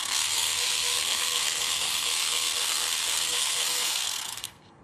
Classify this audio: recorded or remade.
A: remade